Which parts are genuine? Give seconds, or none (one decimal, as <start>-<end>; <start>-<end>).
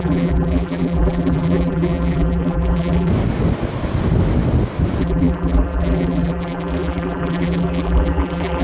3.1-5.0